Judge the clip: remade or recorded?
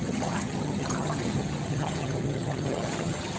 remade